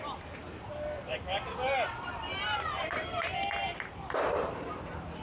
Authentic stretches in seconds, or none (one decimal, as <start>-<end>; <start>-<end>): 0.0-0.4; 1.2-2.1; 4.7-5.2

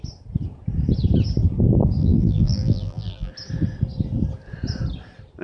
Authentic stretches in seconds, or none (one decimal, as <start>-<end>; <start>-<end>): 0.0-2.0; 3.3-5.4

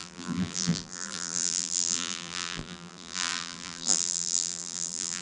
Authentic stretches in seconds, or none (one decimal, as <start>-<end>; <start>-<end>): none

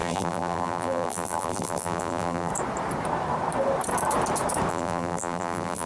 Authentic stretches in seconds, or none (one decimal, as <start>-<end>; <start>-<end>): 2.5-4.7